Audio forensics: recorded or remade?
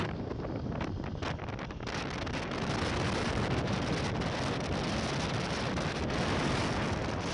recorded